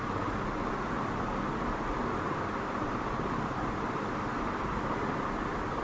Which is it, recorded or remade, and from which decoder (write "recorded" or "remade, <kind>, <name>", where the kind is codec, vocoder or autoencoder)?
recorded